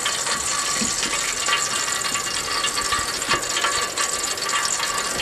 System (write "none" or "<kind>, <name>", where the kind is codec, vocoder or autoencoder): none